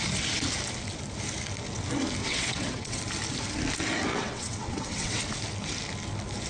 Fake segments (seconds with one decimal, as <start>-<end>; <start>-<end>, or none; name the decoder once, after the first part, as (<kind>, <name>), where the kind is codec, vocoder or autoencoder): 2.2-3.0 (vocoder, WaveNeXt); 4.1-5.2